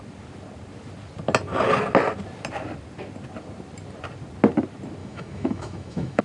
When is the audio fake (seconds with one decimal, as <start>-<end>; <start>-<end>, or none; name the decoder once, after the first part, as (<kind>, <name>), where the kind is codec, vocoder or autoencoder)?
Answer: 5.0-6.2 (autoencoder, DAC-VAE)